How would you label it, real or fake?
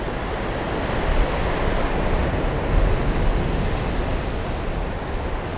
real